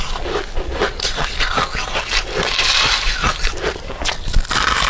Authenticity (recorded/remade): recorded